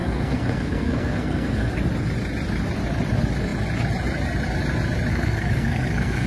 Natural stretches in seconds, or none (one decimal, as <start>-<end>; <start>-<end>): 1.7-5.1

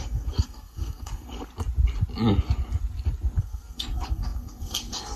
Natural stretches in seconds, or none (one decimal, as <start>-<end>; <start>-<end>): 1.5-3.4